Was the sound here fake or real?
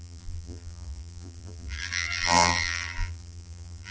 fake